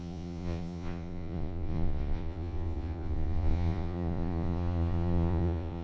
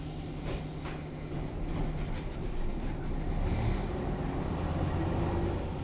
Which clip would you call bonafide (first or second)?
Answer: second